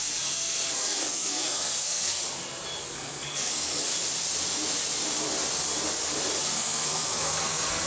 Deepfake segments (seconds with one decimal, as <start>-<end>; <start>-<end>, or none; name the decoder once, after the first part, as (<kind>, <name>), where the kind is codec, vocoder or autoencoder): 0.0-2.2 (codec, SNAC); 2.8-3.9; 6.4-7.9